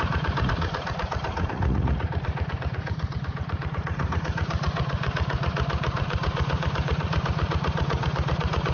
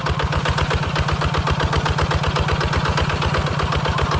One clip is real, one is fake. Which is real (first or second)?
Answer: second